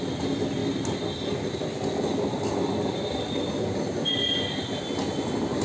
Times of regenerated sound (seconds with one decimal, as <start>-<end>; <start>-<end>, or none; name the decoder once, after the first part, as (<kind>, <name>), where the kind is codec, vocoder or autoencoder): none